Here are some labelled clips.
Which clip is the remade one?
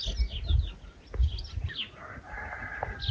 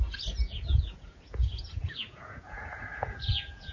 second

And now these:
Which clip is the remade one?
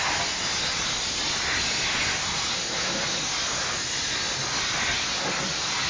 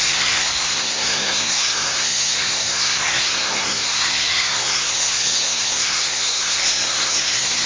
second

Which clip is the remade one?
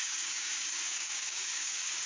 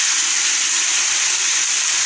first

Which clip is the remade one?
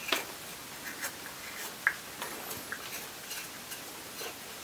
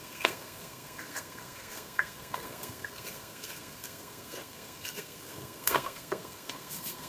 second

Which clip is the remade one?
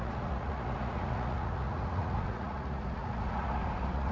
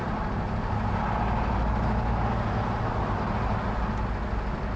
first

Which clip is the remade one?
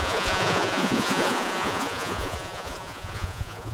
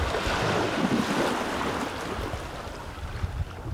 first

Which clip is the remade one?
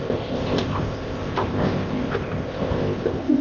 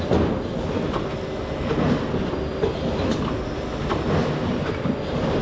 first